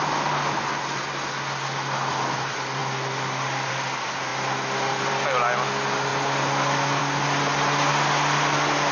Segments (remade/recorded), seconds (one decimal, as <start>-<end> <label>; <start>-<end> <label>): 0.0-8.9 recorded

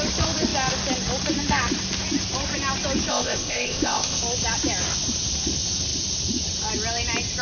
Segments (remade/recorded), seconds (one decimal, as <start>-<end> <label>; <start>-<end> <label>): 0.0-3.1 recorded; 3.1-4.2 remade; 4.2-7.4 recorded

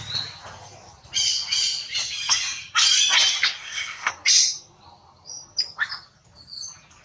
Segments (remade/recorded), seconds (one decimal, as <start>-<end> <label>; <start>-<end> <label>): 0.0-3.6 recorded; 3.6-4.1 remade; 4.1-7.0 recorded

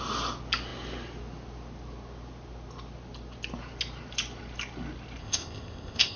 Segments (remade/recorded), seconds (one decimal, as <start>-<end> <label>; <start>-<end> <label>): 0.0-5.2 recorded; 5.2-6.2 remade

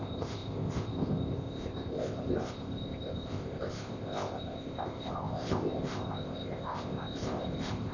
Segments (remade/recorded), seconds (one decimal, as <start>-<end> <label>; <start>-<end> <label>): 0.0-7.9 remade